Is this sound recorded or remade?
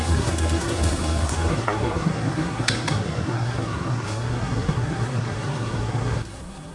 remade